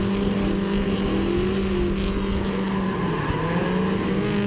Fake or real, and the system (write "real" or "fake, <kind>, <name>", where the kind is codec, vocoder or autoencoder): real